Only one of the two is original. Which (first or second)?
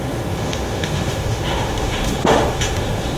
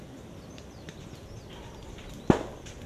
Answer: second